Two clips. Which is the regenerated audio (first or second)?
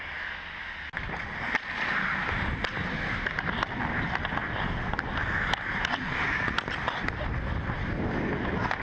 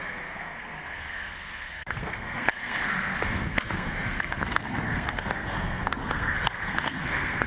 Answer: second